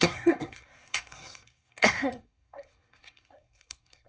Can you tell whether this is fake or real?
fake